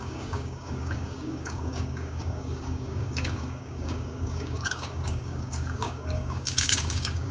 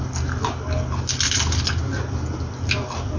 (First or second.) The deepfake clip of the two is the first